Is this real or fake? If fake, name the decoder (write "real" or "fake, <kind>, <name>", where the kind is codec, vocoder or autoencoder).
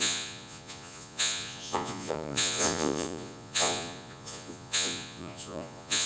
fake, vocoder, Vocos